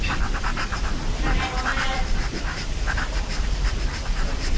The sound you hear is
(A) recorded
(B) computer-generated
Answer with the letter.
B